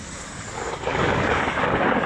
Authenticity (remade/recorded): remade